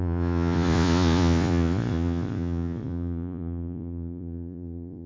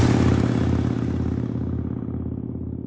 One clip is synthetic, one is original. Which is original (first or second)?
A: second